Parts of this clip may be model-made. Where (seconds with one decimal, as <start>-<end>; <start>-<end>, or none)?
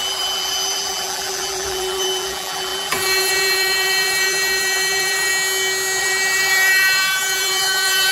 0.0-5.3; 6.0-8.1